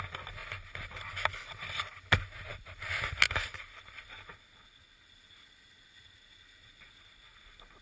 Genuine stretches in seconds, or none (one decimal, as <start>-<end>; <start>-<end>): 0.0-7.8